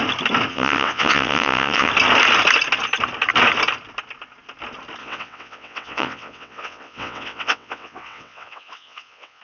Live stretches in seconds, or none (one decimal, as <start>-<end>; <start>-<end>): 0.0-0.5; 1.9-5.0